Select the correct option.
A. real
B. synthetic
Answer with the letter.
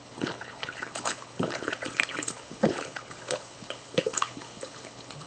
B